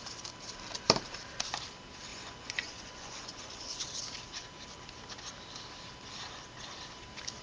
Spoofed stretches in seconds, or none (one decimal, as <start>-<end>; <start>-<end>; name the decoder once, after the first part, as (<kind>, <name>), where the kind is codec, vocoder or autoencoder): 2.1-3.8 (vocoder, Vocos)